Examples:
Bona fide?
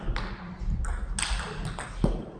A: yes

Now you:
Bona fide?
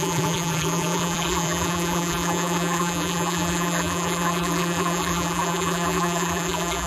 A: no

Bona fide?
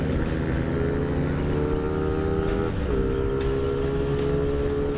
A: yes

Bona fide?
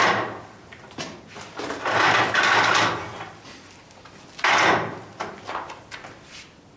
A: yes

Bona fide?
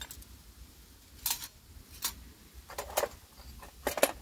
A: yes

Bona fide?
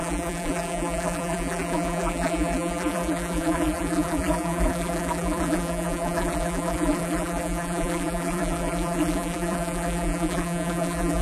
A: no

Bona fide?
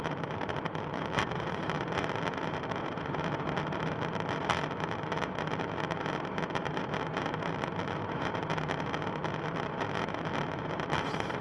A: no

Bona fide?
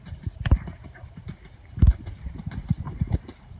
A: no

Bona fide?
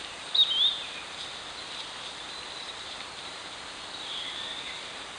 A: no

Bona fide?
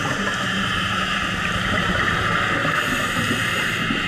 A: no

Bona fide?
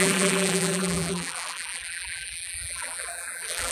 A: no